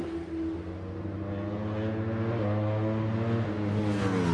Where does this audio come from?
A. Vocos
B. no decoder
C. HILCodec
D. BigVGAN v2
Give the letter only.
B